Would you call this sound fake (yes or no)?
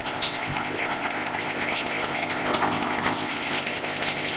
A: yes